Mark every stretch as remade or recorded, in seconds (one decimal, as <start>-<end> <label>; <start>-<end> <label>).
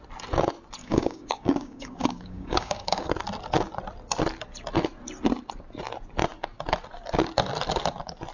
0.0-0.8 recorded; 0.8-3.1 remade; 3.1-8.3 recorded